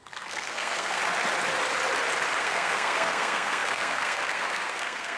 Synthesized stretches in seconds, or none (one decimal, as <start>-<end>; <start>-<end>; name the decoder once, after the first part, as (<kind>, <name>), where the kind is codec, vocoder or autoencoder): 0.0-1.0 (codec, SNAC); 2.4-5.2